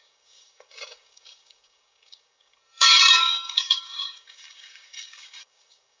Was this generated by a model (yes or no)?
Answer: yes